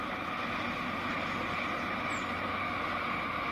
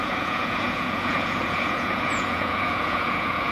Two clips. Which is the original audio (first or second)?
first